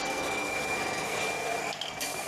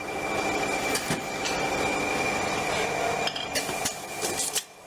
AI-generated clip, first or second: first